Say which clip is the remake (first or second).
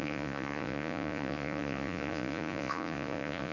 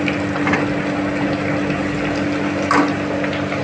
first